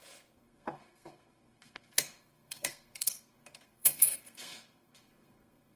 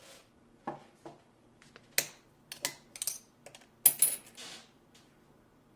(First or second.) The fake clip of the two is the first